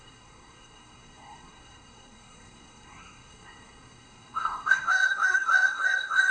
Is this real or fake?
fake